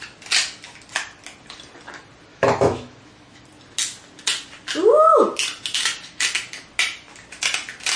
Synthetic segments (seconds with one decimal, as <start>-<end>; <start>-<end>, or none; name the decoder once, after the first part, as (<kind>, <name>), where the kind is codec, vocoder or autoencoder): 2.3-3.4 (autoencoder, DAC-VAE)

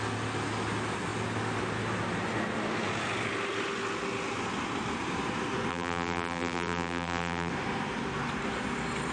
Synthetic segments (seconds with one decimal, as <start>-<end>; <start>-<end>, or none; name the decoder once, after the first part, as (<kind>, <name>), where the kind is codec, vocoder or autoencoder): 5.7-7.5 (vocoder, BigVGAN v2)

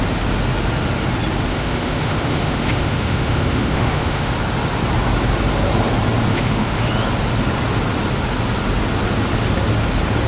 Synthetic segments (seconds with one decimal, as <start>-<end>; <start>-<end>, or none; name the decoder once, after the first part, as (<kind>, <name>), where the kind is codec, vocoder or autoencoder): 1.5-4.3 (autoencoder, DAC-VAE); 6.3-6.9

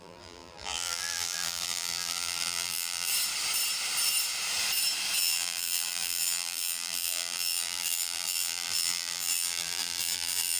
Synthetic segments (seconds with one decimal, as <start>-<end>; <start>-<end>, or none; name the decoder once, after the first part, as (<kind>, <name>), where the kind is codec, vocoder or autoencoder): 0.0-3.1 (vocoder, BigVGAN v2); 5.2-10.6

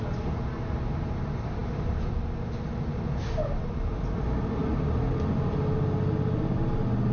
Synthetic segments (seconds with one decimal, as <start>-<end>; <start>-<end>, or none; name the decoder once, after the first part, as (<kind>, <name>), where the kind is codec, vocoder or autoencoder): none